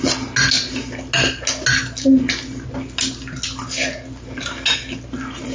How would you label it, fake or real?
real